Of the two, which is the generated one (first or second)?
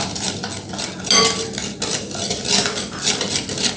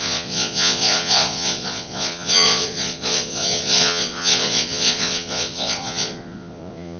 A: second